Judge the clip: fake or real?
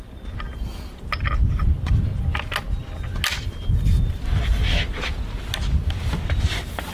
real